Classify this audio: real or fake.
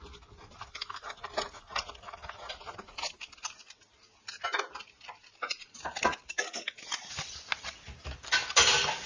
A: real